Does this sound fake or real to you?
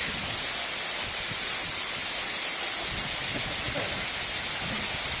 real